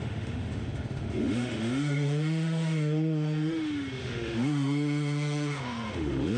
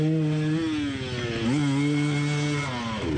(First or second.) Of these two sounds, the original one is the second